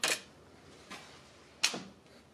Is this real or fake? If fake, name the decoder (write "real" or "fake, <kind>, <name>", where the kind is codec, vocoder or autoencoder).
real